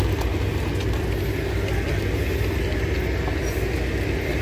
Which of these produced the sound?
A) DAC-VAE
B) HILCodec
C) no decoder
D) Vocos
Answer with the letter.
C